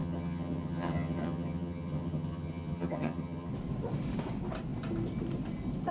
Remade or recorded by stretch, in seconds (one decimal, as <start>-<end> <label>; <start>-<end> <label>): 0.0-3.5 remade; 3.5-5.9 recorded